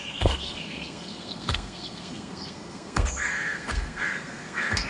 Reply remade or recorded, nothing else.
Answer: remade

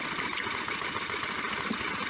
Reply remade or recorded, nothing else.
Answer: recorded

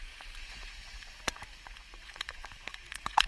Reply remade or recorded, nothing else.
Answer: remade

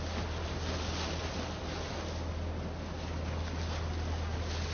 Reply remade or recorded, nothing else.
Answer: recorded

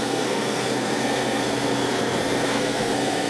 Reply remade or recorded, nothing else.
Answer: remade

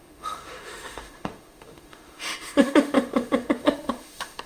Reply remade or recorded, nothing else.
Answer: remade